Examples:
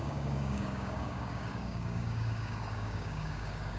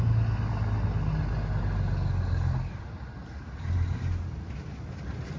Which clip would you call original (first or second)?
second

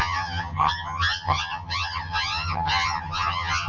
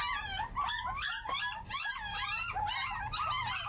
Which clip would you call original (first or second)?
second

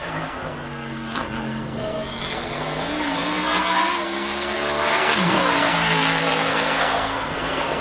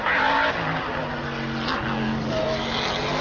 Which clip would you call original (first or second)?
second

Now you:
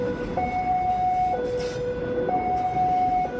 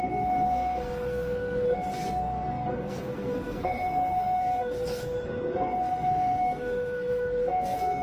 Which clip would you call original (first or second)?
first